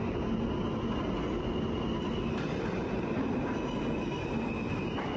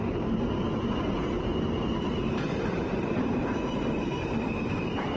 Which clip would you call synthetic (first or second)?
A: second